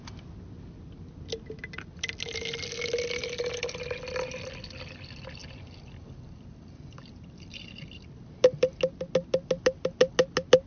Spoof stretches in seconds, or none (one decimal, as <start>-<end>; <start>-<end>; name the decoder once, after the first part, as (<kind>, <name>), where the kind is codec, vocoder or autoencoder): none